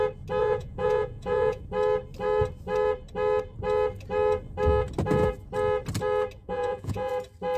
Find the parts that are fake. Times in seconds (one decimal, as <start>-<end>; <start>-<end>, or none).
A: 0.4-1.6; 6.4-7.1